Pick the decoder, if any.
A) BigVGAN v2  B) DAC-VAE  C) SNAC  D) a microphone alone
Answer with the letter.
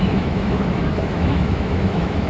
B